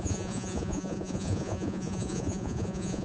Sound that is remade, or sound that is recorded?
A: remade